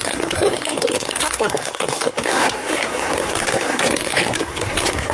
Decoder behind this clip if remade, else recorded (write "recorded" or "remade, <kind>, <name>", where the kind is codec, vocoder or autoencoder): remade, codec, SNAC